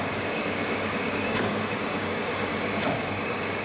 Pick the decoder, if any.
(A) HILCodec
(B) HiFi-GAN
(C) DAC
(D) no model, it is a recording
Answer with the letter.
C